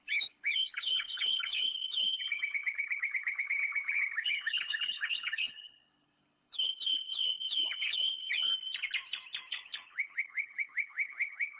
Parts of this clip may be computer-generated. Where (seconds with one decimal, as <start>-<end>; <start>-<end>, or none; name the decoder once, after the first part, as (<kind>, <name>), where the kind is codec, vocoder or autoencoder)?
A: 0.0-8.5 (codec, HILCodec); 9.5-11.6